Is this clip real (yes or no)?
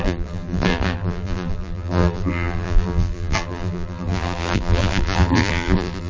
no